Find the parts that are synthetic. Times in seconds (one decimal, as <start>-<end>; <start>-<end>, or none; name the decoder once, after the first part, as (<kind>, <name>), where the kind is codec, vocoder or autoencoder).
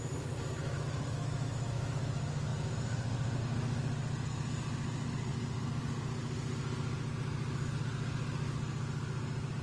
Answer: 0.6-2.1 (autoencoder, DAC-VAE)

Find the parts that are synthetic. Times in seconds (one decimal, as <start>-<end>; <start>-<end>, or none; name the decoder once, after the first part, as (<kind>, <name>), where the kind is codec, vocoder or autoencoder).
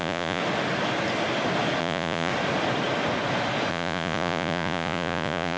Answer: 0.0-0.4 (vocoder, Vocos); 1.8-2.3; 3.7-5.6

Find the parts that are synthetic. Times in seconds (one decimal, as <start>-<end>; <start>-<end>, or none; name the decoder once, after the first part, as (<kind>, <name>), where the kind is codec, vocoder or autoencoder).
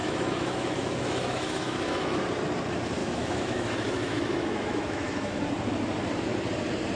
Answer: 0.0-2.2 (autoencoder, DAC-VAE); 3.0-5.4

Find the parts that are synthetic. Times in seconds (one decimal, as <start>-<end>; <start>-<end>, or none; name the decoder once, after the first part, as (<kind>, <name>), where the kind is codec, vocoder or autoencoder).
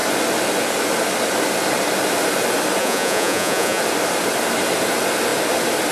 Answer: 2.8-3.8 (vocoder, Vocos)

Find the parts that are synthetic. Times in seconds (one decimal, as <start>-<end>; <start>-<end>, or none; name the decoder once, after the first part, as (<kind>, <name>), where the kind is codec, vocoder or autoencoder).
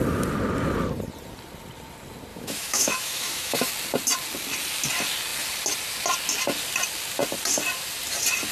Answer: 2.3-3.7 (autoencoder, DAC-VAE)